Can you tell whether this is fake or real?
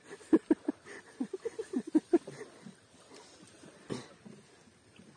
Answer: real